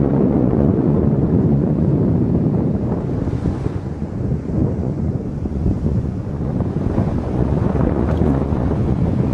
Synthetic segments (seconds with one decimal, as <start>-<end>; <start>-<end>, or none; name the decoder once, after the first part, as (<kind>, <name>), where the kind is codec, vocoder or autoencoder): 0.0-1.9 (vocoder, Vocos); 3.3-9.3